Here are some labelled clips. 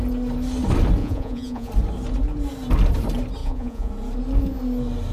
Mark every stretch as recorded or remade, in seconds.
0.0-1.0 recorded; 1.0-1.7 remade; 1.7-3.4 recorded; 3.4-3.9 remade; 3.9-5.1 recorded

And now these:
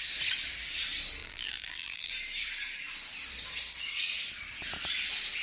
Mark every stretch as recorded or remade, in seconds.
0.0-1.2 recorded; 1.2-2.1 remade; 2.1-5.4 recorded

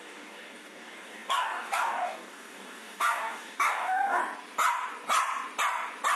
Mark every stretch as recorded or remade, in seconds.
0.0-4.2 remade; 4.2-6.2 recorded